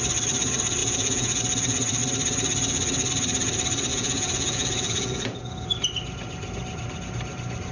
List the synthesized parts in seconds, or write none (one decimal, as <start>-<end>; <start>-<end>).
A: 0.8-1.4; 3.9-5.4